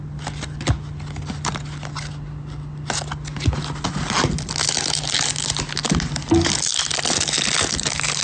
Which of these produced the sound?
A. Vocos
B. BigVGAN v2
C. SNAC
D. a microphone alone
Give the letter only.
D